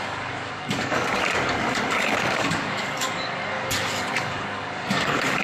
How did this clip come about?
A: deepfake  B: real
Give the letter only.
A